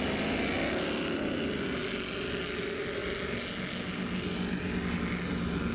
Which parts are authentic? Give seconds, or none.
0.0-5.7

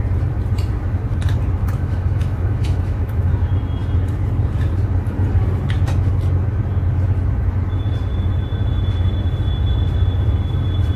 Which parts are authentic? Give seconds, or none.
0.0-1.6; 3.3-11.0